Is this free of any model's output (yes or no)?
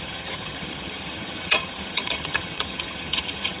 no